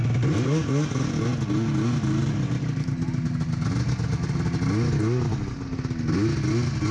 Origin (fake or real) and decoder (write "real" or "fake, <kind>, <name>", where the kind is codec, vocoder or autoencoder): real